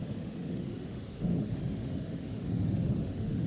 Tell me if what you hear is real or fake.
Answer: fake